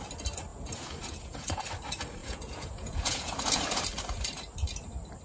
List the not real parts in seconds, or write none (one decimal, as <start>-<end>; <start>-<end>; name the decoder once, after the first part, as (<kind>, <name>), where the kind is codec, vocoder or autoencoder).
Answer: 0.5-1.7 (vocoder, Vocos); 2.2-3.6

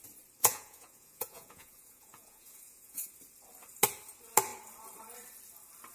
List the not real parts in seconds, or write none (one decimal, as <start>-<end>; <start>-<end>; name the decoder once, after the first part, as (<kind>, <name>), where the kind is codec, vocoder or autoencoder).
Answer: 0.4-3.1 (vocoder, Vocos)

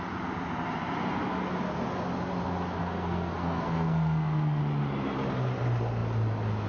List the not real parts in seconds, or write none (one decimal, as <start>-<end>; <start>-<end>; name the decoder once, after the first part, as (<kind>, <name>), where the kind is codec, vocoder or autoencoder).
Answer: 2.8-4.6 (codec, SNAC)

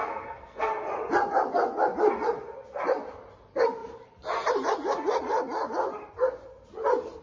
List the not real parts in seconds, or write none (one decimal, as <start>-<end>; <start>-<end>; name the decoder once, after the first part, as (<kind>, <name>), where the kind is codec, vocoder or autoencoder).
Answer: 0.0-0.7 (codec, SNAC)

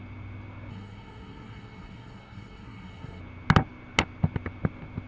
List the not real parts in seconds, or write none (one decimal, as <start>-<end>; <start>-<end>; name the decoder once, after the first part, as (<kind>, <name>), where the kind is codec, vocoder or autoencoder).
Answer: 0.7-3.2 (codec, SNAC)

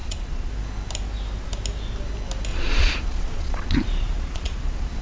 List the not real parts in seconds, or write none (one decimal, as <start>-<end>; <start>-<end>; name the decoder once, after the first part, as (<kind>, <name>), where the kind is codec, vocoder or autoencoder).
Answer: 0.0-0.5 (vocoder, Vocos); 2.5-5.0

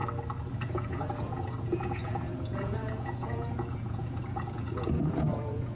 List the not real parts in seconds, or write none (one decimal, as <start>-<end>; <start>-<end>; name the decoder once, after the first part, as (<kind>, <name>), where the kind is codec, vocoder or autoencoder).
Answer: 0.5-5.8 (vocoder, Vocos)

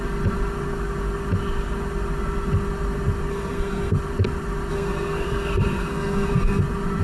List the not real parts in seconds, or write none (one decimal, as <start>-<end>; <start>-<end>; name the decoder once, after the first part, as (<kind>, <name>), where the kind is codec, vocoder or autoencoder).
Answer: 3.3-3.9 (codec, SNAC); 4.7-6.6